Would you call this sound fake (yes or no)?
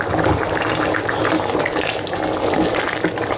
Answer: no